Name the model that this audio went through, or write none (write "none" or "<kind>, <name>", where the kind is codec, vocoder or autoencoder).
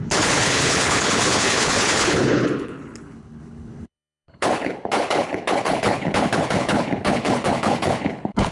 codec, HILCodec